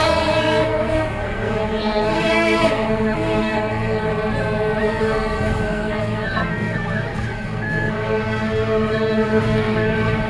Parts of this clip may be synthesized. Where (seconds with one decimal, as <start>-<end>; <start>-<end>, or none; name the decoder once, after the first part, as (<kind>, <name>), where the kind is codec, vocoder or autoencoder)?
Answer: 0.0-4.1 (codec, SNAC); 4.8-10.3